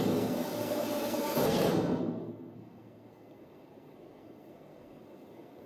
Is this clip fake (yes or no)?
yes